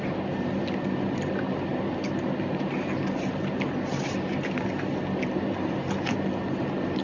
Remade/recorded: recorded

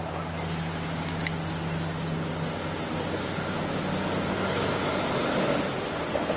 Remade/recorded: recorded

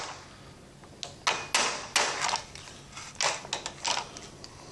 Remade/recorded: recorded